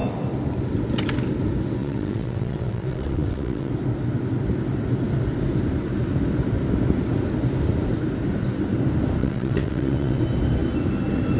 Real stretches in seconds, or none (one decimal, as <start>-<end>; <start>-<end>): 0.0-1.8; 3.7-9.2; 10.2-11.4